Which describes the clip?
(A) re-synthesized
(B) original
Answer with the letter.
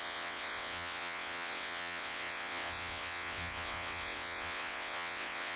A